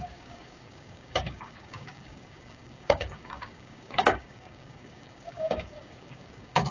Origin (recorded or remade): remade